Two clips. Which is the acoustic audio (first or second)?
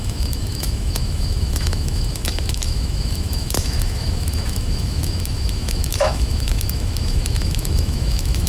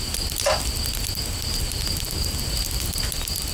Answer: second